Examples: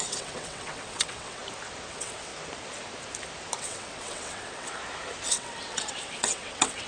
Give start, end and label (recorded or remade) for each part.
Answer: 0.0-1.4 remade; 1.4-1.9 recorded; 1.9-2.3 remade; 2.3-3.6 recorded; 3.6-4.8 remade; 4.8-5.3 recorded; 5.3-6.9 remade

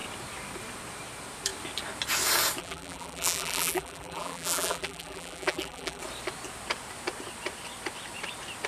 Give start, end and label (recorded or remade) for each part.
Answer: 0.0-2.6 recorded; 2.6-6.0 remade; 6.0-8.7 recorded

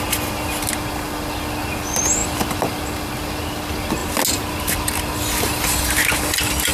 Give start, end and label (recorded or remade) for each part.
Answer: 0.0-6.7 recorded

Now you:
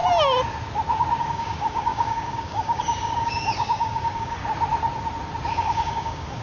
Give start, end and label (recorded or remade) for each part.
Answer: 0.0-1.2 recorded; 1.2-4.4 remade; 4.4-5.5 recorded; 5.5-6.4 remade

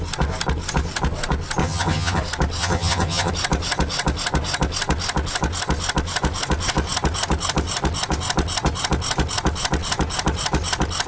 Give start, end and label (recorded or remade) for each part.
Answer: 0.0-1.6 recorded; 1.6-2.2 remade; 2.2-2.6 recorded; 2.6-3.3 remade; 3.3-11.1 recorded